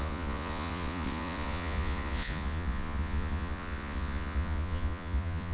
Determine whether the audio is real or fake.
fake